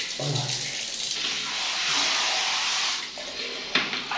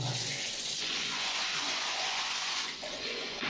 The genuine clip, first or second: first